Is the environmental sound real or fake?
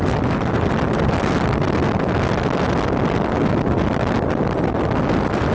real